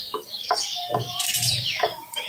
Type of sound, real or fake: fake